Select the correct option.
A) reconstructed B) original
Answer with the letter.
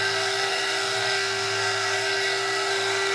A